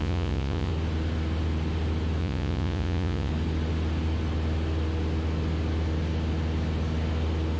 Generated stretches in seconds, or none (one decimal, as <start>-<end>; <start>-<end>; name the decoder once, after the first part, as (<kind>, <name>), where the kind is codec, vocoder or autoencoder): 0.0-0.7 (vocoder, Vocos); 2.2-3.3